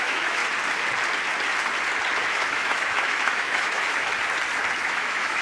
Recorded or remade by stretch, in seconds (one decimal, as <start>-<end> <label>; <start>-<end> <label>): 0.0-0.4 remade; 0.4-2.2 recorded; 2.2-4.1 remade; 4.1-4.8 recorded; 4.8-5.4 remade